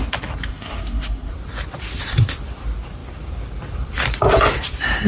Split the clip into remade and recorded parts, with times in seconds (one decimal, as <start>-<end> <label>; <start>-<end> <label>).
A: 0.0-0.5 recorded; 0.5-1.3 remade; 1.3-5.1 recorded

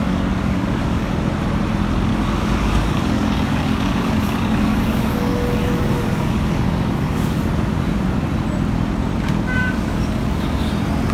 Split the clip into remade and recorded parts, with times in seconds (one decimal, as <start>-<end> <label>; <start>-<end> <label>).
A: 0.0-1.1 remade; 1.1-2.1 recorded; 2.1-7.4 remade; 7.4-9.6 recorded; 9.6-10.7 remade; 10.7-11.1 recorded

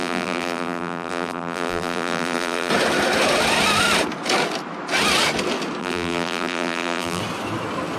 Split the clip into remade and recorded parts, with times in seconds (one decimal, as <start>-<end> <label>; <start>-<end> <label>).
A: 0.0-2.7 remade; 2.7-5.8 recorded; 5.8-7.2 remade; 7.2-8.0 recorded

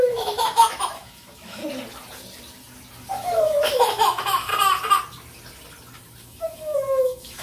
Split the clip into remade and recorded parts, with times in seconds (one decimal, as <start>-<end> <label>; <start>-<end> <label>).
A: 0.0-1.6 remade; 1.6-3.1 recorded; 3.1-4.5 remade; 4.5-6.2 recorded; 6.2-7.4 remade

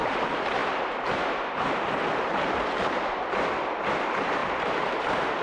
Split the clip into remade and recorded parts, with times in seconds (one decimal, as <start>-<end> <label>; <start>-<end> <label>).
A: 0.0-5.4 recorded

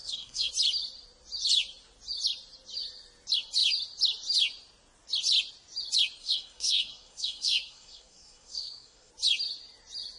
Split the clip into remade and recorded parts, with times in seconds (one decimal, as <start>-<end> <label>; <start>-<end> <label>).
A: 0.0-0.5 remade; 0.5-6.2 recorded; 6.2-9.1 remade; 9.1-10.2 recorded

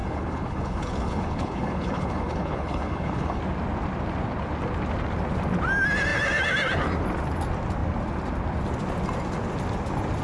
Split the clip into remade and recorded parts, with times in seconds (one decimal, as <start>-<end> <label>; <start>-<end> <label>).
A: 0.0-3.4 remade; 3.4-10.2 recorded